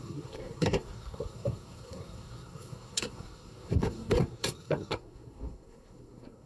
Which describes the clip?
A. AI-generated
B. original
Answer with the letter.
A